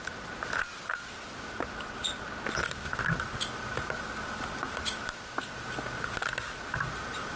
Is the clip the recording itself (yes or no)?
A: yes